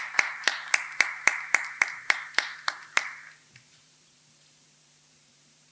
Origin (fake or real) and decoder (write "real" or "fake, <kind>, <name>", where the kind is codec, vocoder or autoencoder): fake, vocoder, BigVGAN v2